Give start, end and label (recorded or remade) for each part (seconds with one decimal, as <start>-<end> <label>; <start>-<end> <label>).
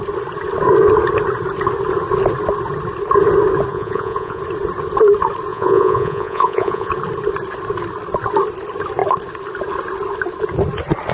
0.0-3.7 recorded; 3.7-4.4 remade; 4.4-5.5 recorded; 5.5-6.9 remade; 6.9-11.1 recorded